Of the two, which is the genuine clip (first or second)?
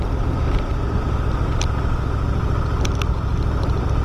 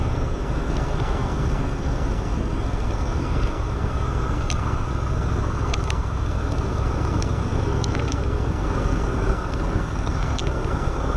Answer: first